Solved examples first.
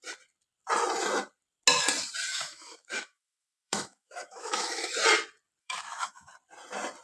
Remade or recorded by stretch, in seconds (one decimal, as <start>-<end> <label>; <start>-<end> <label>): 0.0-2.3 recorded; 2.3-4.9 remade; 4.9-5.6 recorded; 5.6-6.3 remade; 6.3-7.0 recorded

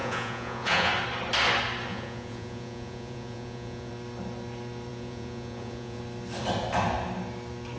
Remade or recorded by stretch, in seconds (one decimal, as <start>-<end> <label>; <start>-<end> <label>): 0.0-0.9 remade; 0.9-1.9 recorded; 1.9-3.9 remade; 3.9-4.9 recorded; 4.9-6.0 remade; 6.0-7.8 recorded

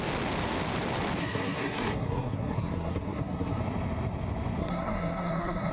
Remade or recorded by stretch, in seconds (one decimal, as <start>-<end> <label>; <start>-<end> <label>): 0.0-1.2 recorded; 1.2-3.6 remade; 3.6-4.6 recorded; 4.6-5.7 remade

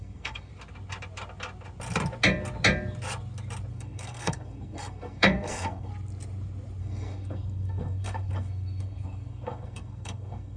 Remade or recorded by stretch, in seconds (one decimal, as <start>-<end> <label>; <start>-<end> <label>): 0.0-0.5 remade; 0.5-3.7 recorded; 3.7-5.9 remade; 5.9-6.8 recorded; 6.8-10.6 remade

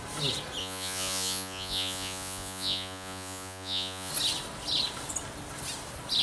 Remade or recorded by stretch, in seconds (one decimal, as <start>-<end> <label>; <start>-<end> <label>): 0.0-0.6 recorded; 0.6-4.1 remade; 4.1-6.2 recorded

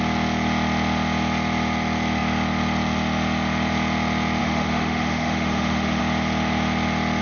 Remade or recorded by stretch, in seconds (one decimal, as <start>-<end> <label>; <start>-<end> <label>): 0.0-4.4 recorded; 4.4-6.0 remade; 6.0-7.2 recorded

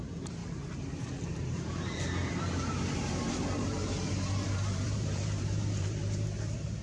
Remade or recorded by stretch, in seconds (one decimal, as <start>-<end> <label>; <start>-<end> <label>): 0.0-0.4 remade; 0.4-1.3 recorded; 1.3-6.8 remade

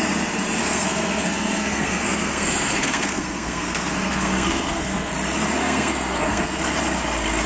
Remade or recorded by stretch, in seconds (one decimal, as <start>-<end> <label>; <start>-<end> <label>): 0.0-0.6 recorded; 0.6-5.1 remade; 5.1-5.6 recorded; 5.6-6.6 remade; 6.6-7.5 recorded